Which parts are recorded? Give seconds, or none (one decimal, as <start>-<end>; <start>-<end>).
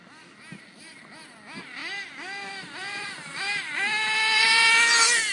0.0-5.3